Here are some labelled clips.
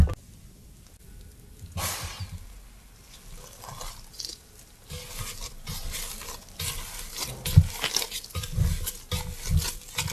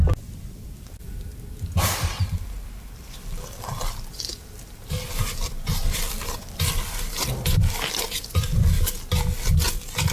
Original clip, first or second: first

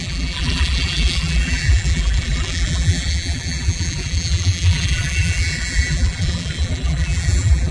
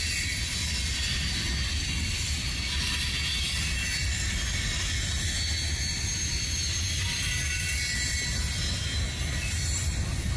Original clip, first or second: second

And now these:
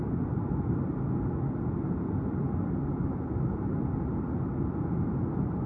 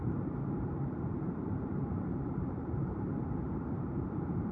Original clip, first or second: first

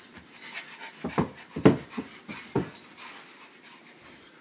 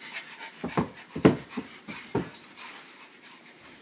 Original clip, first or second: first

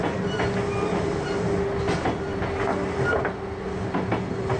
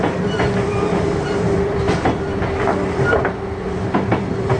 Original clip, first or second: first